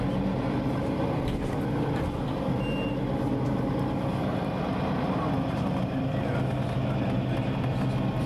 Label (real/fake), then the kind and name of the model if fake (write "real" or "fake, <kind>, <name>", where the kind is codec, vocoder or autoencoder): real